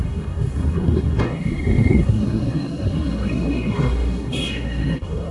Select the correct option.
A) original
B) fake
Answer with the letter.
B